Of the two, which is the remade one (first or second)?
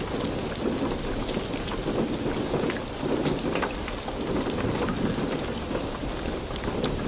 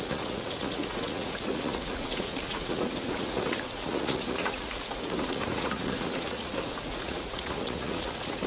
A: second